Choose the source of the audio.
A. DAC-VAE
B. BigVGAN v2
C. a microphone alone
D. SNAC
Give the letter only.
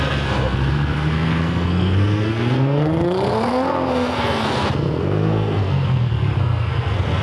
D